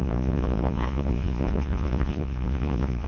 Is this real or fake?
fake